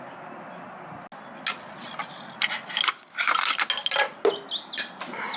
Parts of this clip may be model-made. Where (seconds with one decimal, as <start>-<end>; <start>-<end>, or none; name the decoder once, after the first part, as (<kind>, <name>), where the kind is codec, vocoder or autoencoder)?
none